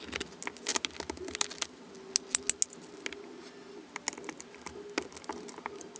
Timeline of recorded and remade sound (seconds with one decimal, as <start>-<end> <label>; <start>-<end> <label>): 0.0-6.0 recorded